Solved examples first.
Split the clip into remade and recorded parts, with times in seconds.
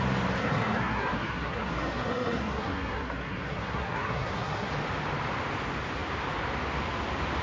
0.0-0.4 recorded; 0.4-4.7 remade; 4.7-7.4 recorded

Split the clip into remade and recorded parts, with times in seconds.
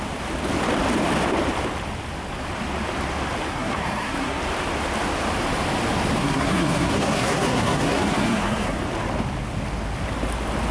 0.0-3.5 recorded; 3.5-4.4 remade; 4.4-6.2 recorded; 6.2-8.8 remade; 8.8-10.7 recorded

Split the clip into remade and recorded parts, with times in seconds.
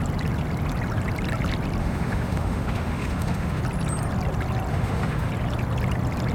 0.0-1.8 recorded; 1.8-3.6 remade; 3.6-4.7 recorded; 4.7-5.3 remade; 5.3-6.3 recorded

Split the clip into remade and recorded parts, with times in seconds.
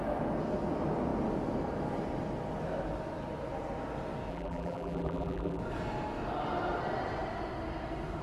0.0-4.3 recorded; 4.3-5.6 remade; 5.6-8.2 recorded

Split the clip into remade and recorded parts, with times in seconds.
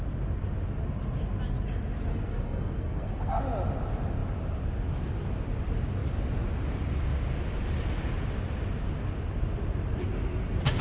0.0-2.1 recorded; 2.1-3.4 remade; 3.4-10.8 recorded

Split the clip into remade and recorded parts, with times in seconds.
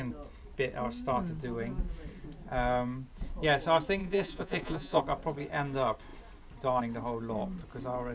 0.0-4.0 recorded; 4.0-5.0 remade; 5.0-8.1 recorded